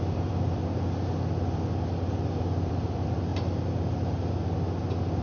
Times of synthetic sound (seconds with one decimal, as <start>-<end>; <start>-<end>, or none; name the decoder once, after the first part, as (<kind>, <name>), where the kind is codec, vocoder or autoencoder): 0.0-0.6 (vocoder, BigVGAN v2); 2.4-3.3